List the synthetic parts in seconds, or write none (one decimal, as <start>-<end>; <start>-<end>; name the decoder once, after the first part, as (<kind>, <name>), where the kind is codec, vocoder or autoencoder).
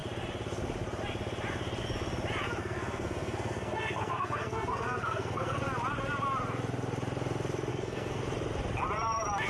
2.6-5.6 (codec, SNAC); 7.7-8.2